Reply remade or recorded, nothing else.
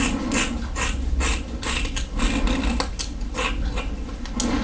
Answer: recorded